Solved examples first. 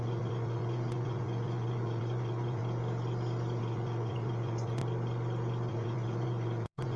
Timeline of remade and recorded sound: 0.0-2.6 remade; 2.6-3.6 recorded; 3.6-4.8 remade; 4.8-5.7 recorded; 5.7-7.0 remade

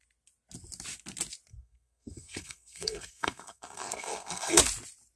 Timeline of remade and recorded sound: 0.0-1.5 recorded; 1.5-4.6 remade; 4.6-5.2 recorded

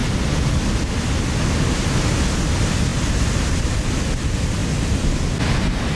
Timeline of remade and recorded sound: 0.0-5.9 recorded

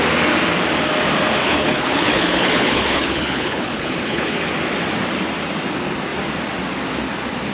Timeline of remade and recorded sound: 0.0-1.4 recorded; 1.4-4.5 remade; 4.5-7.5 recorded

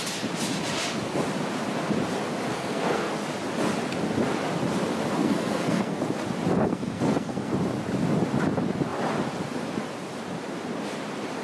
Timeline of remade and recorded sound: 0.0-2.5 recorded; 2.5-3.1 remade; 3.1-5.2 recorded; 5.2-6.0 remade; 6.0-6.5 recorded; 6.5-7.5 remade; 7.5-11.4 recorded

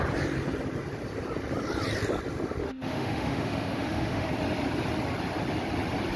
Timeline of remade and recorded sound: 0.0-2.6 recorded; 2.6-4.3 remade; 4.3-6.2 recorded

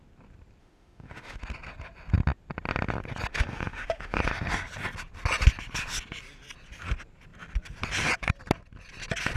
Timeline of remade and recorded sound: 0.0-0.6 recorded; 0.6-1.4 remade; 1.4-3.3 recorded; 3.3-4.2 remade; 4.2-9.4 recorded

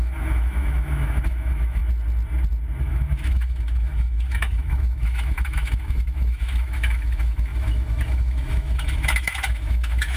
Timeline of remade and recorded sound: 0.0-1.8 remade; 1.8-2.8 recorded; 2.8-10.2 remade